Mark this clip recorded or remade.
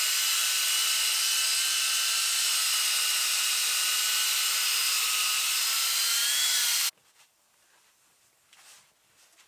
recorded